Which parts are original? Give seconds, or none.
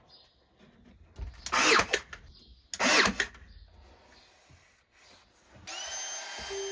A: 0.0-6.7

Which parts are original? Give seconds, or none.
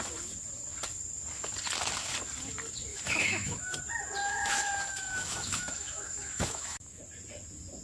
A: 0.0-2.9; 3.8-4.2; 7.0-7.8